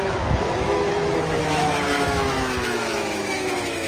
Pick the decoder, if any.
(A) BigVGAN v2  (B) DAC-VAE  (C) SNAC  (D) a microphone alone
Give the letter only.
B